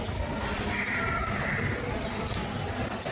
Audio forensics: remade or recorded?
recorded